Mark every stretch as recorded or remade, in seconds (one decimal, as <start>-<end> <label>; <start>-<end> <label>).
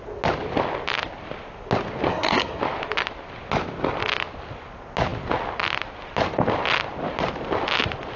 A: 0.0-2.1 recorded; 2.1-2.6 remade; 2.6-8.2 recorded